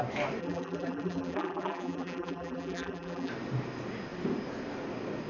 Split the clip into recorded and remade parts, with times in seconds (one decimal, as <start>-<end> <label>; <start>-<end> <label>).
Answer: 0.0-0.4 recorded; 0.4-3.3 remade; 3.3-5.3 recorded